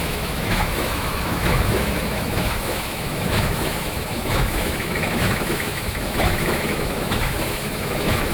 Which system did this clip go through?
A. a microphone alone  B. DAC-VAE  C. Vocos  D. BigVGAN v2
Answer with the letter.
B